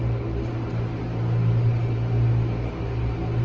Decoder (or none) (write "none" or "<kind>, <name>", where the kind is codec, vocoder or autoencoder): none